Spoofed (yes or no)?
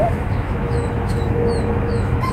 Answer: yes